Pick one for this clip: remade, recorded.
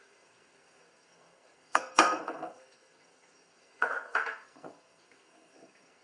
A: remade